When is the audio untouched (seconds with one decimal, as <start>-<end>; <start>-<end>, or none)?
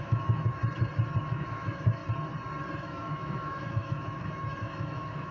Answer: 0.6-1.2; 2.0-2.8